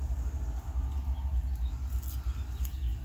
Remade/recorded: recorded